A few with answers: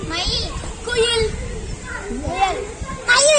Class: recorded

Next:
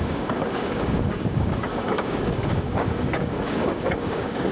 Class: remade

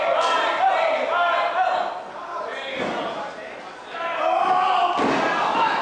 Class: recorded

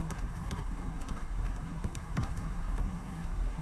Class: remade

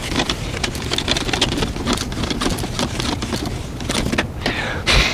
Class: recorded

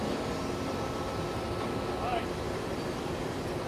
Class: recorded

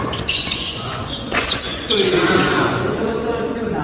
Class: remade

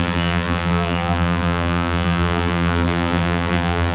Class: remade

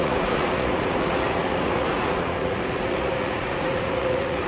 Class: remade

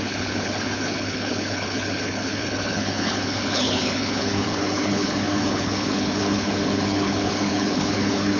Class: remade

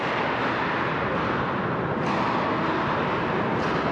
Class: recorded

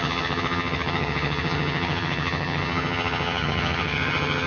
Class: remade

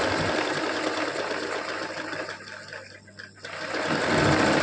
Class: recorded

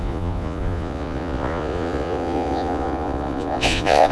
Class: remade